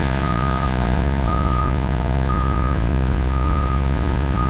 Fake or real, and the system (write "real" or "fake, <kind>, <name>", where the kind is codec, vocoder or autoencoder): fake, vocoder, Vocos